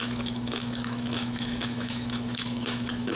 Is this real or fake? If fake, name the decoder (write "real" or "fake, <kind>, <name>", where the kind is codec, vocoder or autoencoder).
fake, autoencoder, DAC-VAE